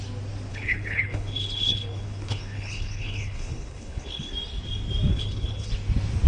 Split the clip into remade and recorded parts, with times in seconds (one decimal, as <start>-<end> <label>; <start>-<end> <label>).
0.0-0.5 recorded; 0.5-4.3 remade; 4.3-5.1 recorded; 5.1-5.7 remade; 5.7-6.3 recorded